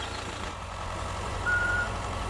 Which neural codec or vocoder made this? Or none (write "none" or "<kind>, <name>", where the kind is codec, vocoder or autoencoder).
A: vocoder, Vocos